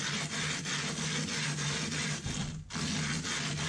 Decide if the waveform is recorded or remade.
recorded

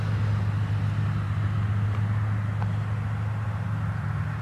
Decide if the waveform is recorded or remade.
recorded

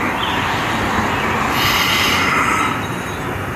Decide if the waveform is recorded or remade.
recorded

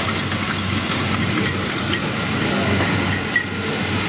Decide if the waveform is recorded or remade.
recorded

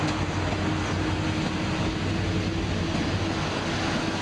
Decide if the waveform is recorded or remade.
recorded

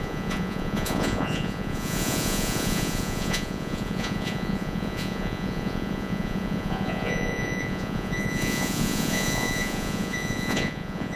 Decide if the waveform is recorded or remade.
remade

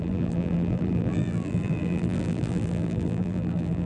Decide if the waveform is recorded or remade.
remade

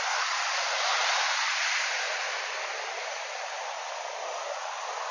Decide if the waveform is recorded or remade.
recorded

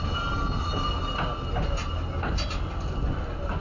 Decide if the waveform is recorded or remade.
recorded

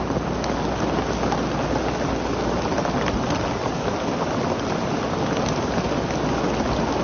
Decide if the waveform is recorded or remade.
recorded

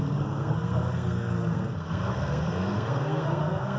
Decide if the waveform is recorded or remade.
remade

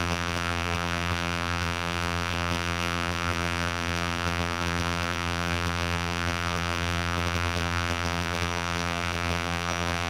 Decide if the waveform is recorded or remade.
remade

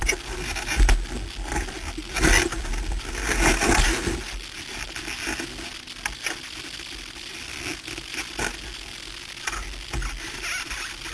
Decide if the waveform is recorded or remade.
recorded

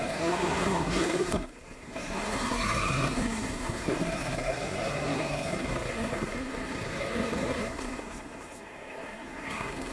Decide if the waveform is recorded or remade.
remade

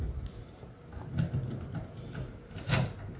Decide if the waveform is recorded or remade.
recorded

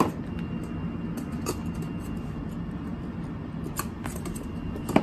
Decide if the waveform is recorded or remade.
recorded